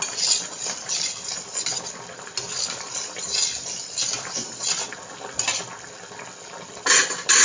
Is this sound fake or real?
real